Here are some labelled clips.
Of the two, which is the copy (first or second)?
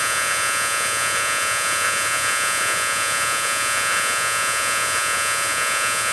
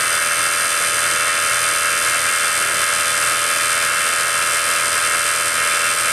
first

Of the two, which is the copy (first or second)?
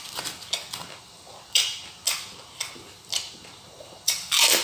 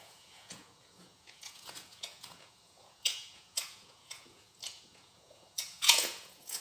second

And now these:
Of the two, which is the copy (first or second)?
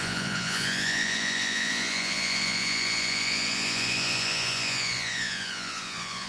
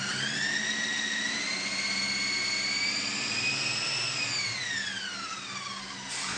first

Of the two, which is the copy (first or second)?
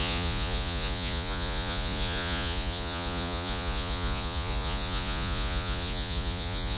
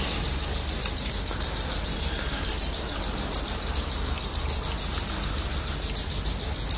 first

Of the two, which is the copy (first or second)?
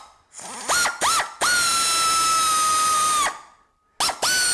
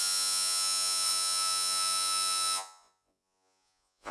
second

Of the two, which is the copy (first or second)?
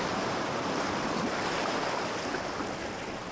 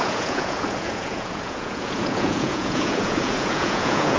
second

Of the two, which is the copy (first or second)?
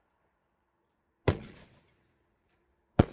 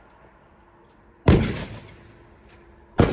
first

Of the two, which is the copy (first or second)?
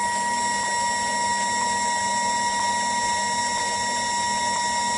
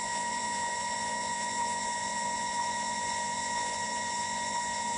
second